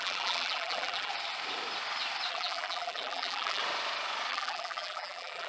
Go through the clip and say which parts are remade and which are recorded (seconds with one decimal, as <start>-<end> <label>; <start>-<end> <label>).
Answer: 0.0-1.1 remade; 1.1-2.3 recorded; 2.3-3.6 remade; 3.6-4.3 recorded; 4.3-5.5 remade